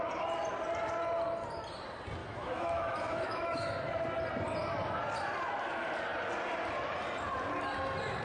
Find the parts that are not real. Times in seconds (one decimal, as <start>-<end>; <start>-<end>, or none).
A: 2.2-3.7